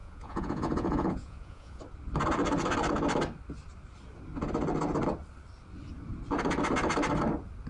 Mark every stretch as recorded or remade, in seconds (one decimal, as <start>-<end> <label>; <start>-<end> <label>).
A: 0.0-1.8 remade; 1.8-7.7 recorded

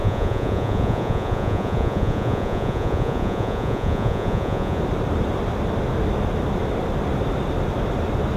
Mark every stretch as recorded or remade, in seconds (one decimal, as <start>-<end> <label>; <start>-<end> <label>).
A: 0.0-4.8 remade; 4.8-8.4 recorded